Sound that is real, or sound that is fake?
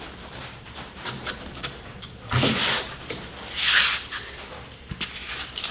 real